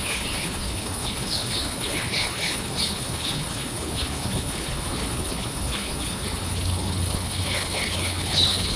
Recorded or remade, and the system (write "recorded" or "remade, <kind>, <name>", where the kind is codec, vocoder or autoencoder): remade, codec, HILCodec